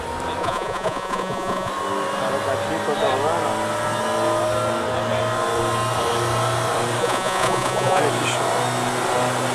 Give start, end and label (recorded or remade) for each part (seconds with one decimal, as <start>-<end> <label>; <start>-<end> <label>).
0.0-0.4 recorded; 0.4-1.7 remade; 1.7-7.0 recorded; 7.0-8.0 remade; 8.0-9.5 recorded